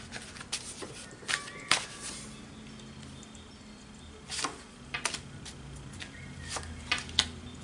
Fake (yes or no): no